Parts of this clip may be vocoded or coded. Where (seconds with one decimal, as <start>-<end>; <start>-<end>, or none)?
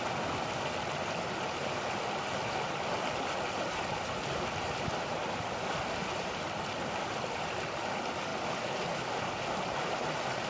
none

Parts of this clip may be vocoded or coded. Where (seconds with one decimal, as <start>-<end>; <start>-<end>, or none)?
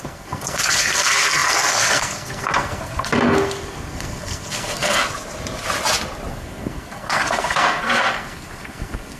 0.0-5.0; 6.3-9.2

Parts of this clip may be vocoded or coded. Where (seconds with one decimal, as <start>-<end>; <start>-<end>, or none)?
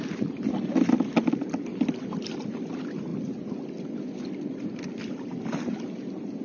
0.0-3.1; 3.8-6.4